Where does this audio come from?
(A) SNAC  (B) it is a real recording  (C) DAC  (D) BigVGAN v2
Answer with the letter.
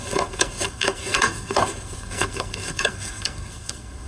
A